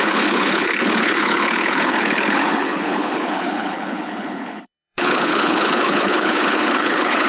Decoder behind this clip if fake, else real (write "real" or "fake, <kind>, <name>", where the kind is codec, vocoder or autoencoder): fake, codec, HILCodec